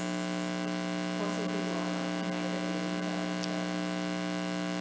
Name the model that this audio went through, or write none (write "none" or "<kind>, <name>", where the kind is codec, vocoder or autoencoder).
none